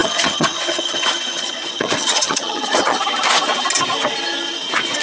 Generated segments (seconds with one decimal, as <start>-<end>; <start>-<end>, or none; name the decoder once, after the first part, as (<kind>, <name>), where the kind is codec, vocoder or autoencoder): 0.0-3.0 (vocoder, HiFi-GAN)